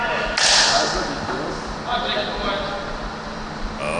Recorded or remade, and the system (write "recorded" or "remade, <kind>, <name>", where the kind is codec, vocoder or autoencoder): recorded